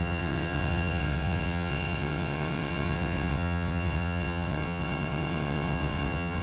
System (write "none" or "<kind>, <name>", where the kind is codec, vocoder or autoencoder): vocoder, WaveNeXt